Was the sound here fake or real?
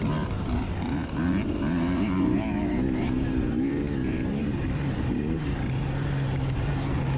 fake